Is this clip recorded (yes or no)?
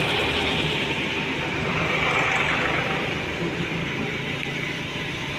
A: yes